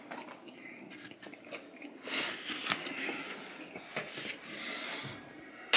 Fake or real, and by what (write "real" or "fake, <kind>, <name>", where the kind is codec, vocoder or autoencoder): real